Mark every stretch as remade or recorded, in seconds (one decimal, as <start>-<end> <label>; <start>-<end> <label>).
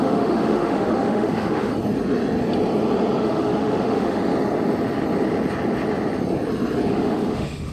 0.0-1.7 remade; 1.7-3.2 recorded; 3.2-4.2 remade; 4.2-6.9 recorded; 6.9-7.7 remade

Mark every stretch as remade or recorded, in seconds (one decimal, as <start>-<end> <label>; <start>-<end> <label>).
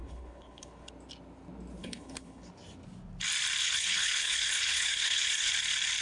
0.0-0.9 remade; 0.9-1.8 recorded; 1.8-2.5 remade; 2.5-3.6 recorded; 3.6-5.5 remade; 5.5-6.0 recorded